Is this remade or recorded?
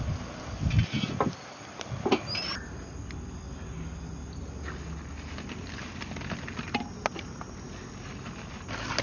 recorded